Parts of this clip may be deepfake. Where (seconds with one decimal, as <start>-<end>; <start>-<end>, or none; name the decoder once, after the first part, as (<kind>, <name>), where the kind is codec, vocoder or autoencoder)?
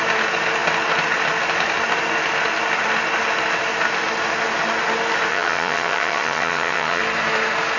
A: 5.3-7.0 (vocoder, HiFi-GAN)